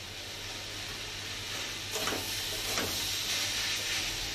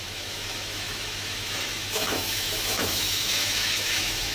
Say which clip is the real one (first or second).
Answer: first